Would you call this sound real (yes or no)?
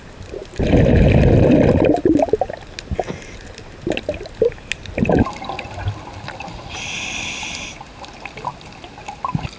yes